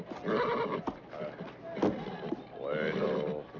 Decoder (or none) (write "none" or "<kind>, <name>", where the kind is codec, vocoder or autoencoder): none